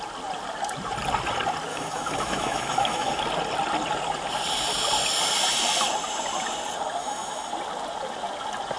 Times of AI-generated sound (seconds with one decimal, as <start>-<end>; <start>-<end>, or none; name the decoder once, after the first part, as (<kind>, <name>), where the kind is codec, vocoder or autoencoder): 1.7-3.2 (autoencoder, DAC-VAE); 7.0-7.5